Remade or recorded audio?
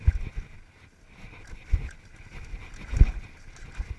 recorded